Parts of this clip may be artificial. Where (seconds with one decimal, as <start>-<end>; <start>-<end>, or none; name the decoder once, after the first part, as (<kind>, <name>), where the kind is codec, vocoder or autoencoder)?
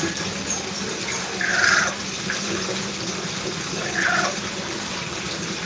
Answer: none